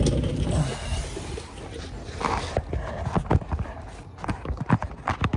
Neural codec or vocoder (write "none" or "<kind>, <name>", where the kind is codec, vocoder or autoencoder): none